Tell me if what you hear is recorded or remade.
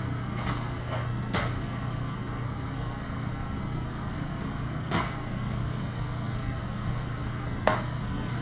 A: remade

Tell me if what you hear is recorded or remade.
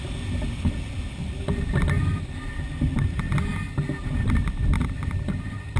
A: recorded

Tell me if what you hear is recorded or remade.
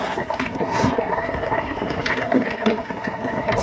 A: remade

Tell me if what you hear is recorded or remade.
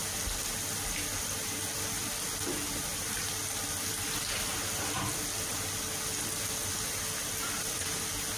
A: recorded